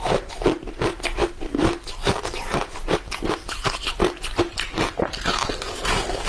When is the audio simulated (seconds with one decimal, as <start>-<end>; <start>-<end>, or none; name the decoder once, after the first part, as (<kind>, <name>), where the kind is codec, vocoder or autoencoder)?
none